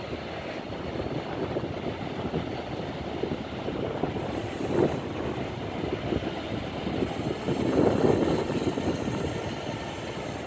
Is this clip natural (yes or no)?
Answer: yes